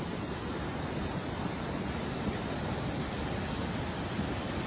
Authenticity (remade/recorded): recorded